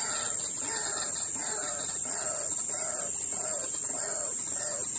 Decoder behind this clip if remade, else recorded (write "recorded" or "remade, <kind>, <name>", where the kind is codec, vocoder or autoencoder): recorded